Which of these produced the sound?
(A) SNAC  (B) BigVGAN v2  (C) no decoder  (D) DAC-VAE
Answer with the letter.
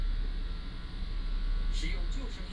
C